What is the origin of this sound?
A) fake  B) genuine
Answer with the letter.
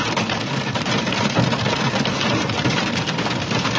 B